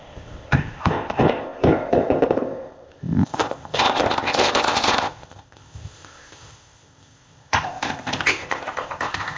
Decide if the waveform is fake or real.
fake